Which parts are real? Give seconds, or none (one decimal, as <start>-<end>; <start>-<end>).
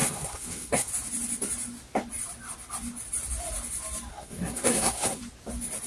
0.9-4.1; 5.2-5.9